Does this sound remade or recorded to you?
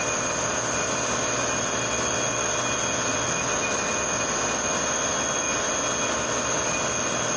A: recorded